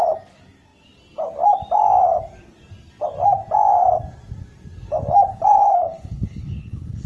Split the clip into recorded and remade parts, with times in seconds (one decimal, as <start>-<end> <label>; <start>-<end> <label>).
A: 0.0-5.3 recorded; 5.3-7.1 remade